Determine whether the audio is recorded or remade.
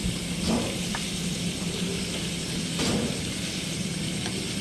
recorded